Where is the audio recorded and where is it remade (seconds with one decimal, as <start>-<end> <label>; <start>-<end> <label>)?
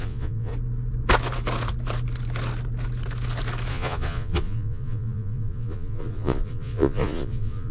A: 0.0-0.5 remade; 0.5-3.7 recorded; 3.7-7.7 remade